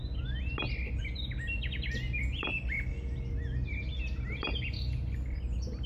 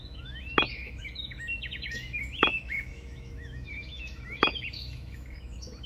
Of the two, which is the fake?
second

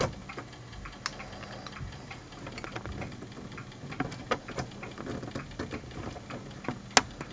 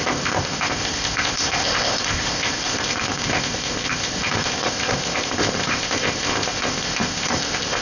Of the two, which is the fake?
second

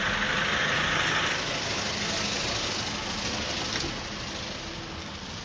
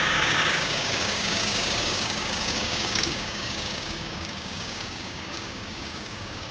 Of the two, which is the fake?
second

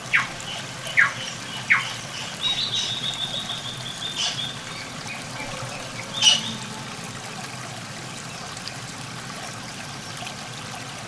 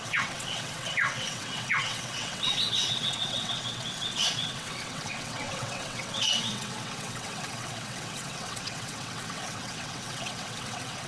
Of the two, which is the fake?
second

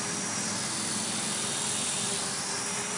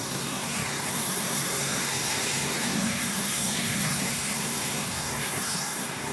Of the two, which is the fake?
second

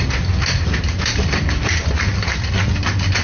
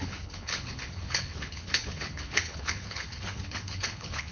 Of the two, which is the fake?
second